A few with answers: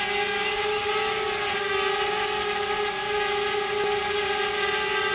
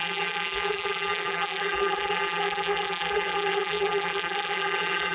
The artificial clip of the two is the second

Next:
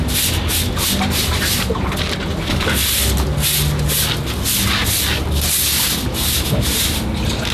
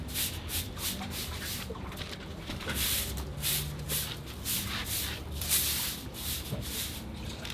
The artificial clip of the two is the second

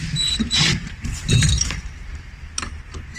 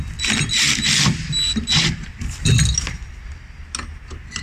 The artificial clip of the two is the first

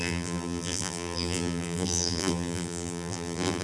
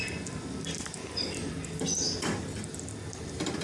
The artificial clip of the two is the first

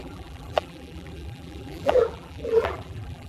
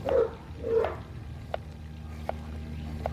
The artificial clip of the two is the first